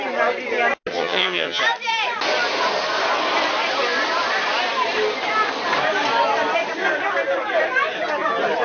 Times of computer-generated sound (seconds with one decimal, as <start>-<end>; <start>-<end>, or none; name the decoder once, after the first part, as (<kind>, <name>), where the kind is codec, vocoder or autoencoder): 0.9-1.6 (vocoder, HiFi-GAN)